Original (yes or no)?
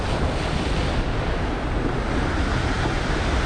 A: yes